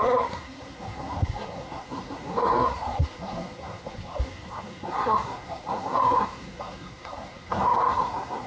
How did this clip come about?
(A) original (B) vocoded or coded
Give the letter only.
B